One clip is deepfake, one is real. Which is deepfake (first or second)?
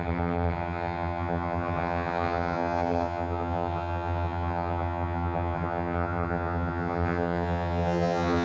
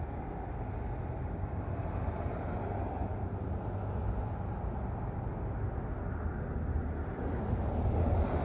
first